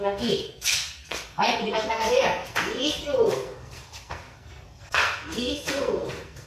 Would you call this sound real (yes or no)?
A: no